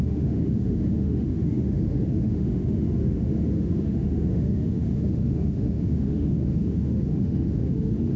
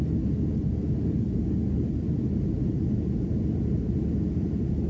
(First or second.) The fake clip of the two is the first